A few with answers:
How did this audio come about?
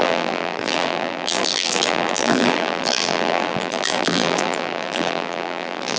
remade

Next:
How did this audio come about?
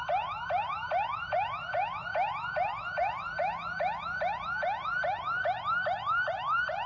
recorded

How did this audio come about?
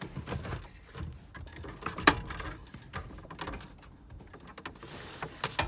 recorded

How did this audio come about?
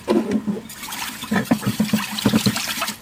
remade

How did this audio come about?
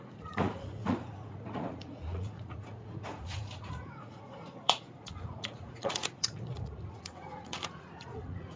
remade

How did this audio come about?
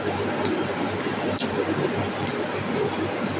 recorded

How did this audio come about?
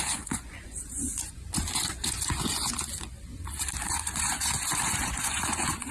remade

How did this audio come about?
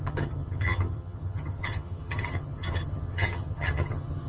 remade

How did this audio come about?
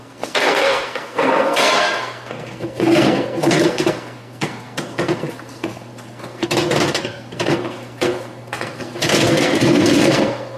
remade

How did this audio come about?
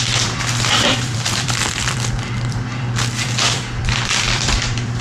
remade